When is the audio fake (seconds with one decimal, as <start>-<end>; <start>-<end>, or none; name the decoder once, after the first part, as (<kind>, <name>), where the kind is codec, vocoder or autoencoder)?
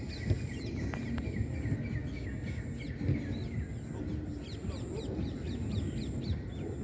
none